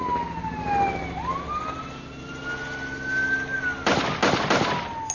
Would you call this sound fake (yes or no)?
no